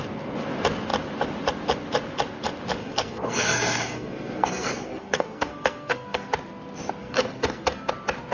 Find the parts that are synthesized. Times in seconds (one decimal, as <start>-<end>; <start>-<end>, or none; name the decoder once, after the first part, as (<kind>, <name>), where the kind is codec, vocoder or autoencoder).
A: 2.8-6.3 (codec, SNAC); 7.0-7.9